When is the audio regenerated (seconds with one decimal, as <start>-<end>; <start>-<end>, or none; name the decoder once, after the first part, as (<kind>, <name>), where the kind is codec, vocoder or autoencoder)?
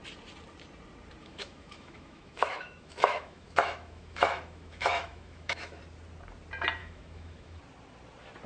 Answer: 1.2-5.8 (autoencoder, DAC-VAE); 6.8-7.6